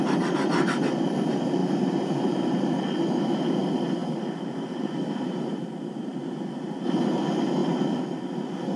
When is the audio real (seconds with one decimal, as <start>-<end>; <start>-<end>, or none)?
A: 0.0-1.6; 2.6-4.0; 5.6-8.8